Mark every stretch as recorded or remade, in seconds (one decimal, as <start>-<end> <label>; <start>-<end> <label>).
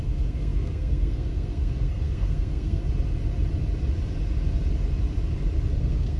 0.0-2.8 remade; 2.8-5.8 recorded; 5.8-6.2 remade